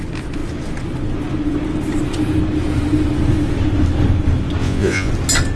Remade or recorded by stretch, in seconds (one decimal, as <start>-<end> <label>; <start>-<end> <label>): 0.0-4.6 recorded; 4.6-5.1 remade; 5.1-5.6 recorded